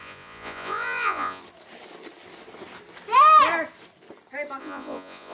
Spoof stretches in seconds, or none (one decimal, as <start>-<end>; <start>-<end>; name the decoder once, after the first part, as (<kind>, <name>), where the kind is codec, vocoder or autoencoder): 0.0-1.4 (vocoder, Vocos); 4.6-5.3

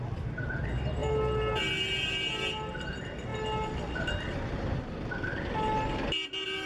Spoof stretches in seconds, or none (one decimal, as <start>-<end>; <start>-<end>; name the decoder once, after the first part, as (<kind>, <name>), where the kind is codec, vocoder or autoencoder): none

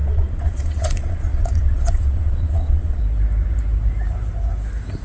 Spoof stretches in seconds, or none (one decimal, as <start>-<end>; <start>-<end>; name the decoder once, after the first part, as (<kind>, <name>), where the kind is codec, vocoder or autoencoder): 0.0-3.0 (vocoder, Vocos)

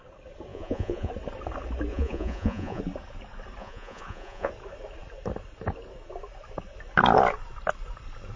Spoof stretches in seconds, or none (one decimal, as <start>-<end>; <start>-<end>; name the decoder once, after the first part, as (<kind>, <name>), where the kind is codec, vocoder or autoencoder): 0.5-1.1 (vocoder, Vocos); 1.9-2.8; 3.6-4.5